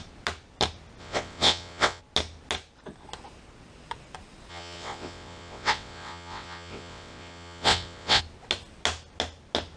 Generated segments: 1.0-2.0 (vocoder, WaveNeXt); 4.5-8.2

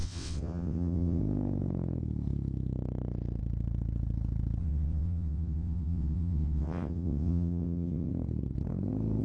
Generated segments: 0.0-1.2 (vocoder, WaveNeXt); 4.6-8.1

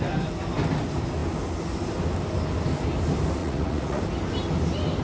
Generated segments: 3.4-4.0 (vocoder, Vocos)

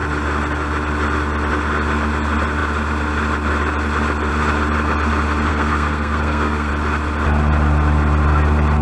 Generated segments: 5.5-6.7 (codec, SNAC)